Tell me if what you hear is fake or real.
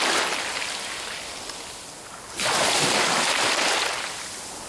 real